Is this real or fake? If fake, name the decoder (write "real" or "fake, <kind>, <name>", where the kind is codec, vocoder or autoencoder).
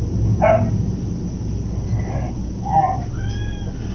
real